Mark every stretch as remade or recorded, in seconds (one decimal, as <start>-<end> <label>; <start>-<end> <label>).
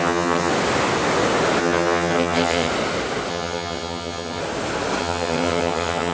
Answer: 0.0-0.5 remade; 0.5-1.6 recorded; 1.6-2.7 remade; 2.7-3.3 recorded; 3.3-4.4 remade; 4.4-5.0 recorded; 5.0-6.1 remade